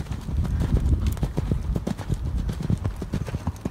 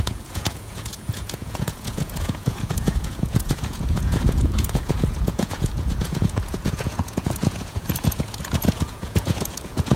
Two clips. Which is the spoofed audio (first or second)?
second